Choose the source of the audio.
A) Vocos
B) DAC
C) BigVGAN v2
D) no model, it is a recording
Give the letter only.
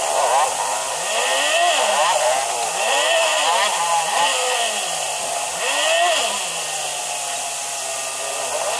D